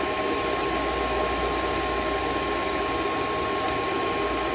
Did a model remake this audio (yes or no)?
no